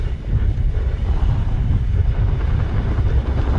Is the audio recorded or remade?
recorded